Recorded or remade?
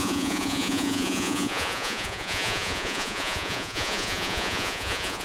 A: remade